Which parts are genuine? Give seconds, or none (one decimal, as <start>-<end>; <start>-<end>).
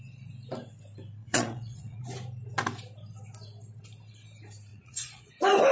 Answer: 0.0-1.2; 2.0-4.7; 5.3-5.7